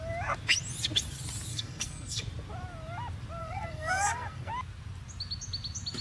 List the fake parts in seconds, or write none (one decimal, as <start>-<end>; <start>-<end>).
1.5-2.2; 3.4-4.5